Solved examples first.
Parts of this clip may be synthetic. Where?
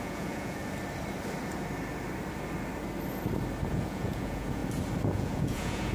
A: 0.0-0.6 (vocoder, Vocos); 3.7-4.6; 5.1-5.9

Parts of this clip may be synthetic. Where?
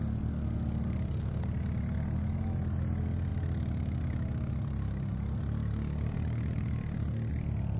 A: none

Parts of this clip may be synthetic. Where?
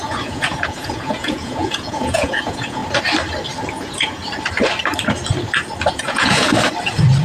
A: 0.0-2.8 (vocoder, Vocos); 3.7-4.2; 5.9-6.5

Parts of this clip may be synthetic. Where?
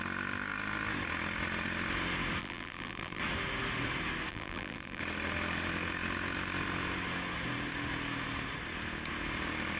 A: 2.4-3.2 (vocoder, BigVGAN v2); 4.3-5.0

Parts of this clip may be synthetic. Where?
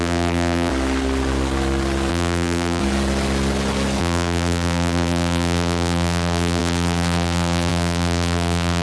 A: 0.0-0.7 (vocoder, BigVGAN v2); 2.1-2.8; 4.0-8.8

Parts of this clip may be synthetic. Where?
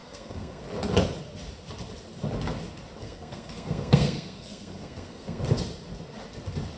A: 0.0-0.6 (codec, SNAC); 3.0-5.4